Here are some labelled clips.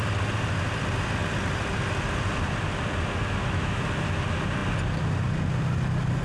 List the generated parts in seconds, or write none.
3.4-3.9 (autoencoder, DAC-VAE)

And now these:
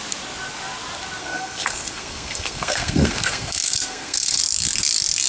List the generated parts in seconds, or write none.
1.2-4.4 (codec, SNAC)

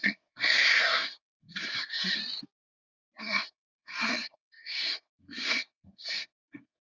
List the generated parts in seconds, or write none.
0.0-2.2 (codec, SNAC); 3.2-6.8

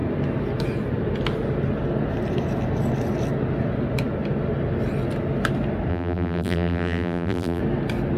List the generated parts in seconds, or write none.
5.9-7.6 (vocoder, BigVGAN v2)

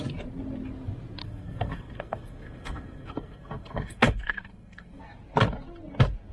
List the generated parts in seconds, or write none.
1.2-5.0 (codec, SNAC)

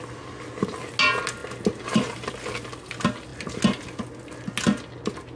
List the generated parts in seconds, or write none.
none

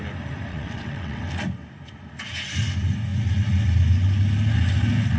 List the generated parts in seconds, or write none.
0.5-1.2 (vocoder, WaveNeXt)